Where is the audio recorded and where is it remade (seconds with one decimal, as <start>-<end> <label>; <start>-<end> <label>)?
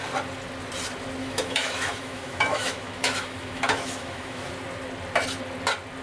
0.0-1.2 recorded; 1.2-4.5 remade; 4.5-6.0 recorded